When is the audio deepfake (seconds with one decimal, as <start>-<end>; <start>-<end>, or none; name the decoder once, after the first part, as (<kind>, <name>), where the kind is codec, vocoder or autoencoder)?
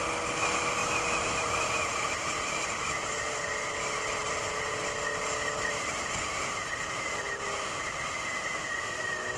0.8-3.2 (vocoder, BigVGAN v2); 4.2-4.8